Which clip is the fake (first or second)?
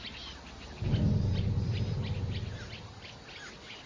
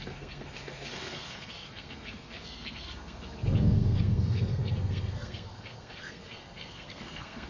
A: second